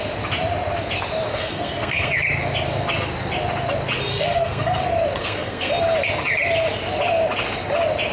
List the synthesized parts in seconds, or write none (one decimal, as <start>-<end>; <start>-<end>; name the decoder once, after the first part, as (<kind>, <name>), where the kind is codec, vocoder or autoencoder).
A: 1.3-2.1 (codec, SNAC); 4.1-4.8; 5.2-5.7